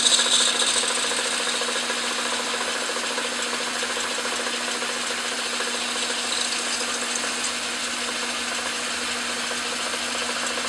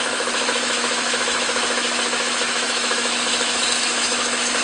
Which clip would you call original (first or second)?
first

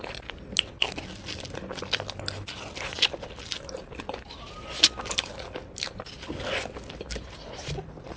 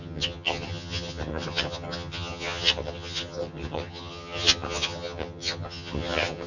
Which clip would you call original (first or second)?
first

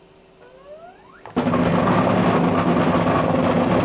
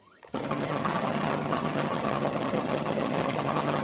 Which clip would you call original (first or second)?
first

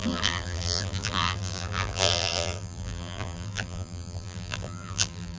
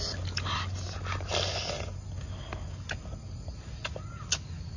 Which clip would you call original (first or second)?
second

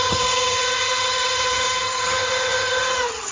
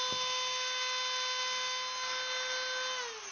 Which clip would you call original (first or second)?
second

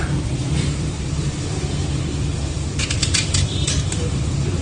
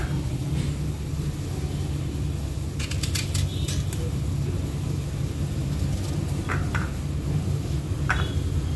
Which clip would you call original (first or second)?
second